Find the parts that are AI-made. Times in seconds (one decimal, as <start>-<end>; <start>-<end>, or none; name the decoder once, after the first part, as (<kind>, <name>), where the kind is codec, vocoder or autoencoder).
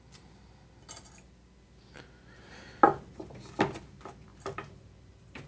none